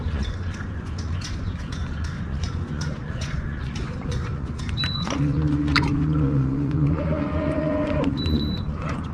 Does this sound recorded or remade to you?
remade